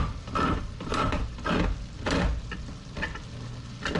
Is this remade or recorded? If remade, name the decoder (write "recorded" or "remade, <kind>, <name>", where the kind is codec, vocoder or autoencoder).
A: recorded